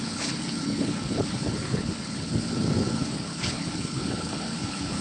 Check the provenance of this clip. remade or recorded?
remade